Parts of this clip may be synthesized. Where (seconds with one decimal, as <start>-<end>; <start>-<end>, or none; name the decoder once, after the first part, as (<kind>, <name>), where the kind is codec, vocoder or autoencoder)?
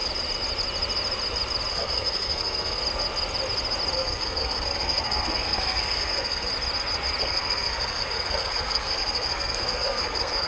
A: 1.7-2.8 (codec, SNAC); 3.9-6.5; 7.2-10.5